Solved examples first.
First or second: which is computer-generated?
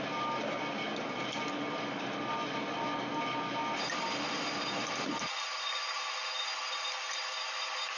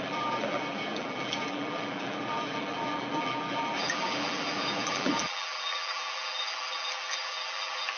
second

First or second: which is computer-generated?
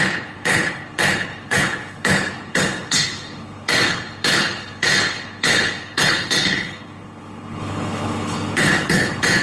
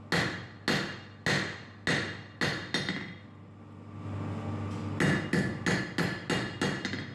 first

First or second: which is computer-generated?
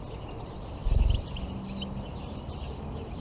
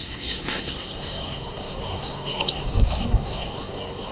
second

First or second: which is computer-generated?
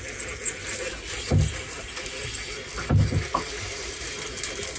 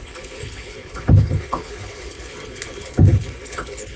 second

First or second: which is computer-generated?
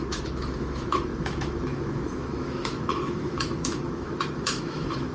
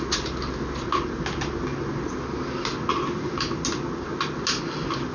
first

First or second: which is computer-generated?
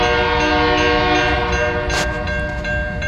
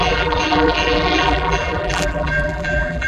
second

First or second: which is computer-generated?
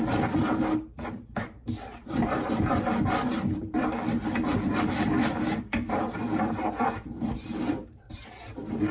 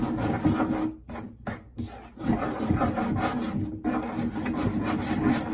first